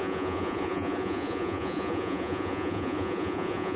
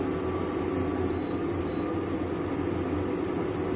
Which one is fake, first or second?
first